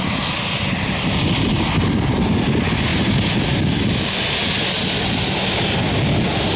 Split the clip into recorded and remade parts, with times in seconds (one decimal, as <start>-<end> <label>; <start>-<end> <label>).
0.0-6.6 recorded